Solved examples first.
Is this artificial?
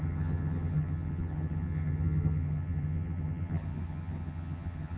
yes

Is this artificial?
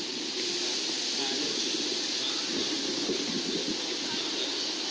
no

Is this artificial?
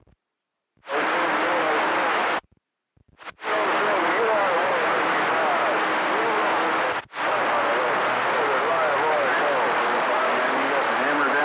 no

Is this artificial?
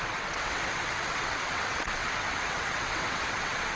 yes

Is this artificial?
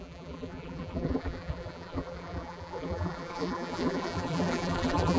yes